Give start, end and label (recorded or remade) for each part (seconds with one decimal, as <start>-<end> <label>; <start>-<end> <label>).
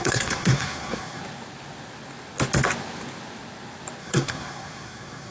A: 0.0-1.2 remade; 1.2-4.0 recorded; 4.0-5.3 remade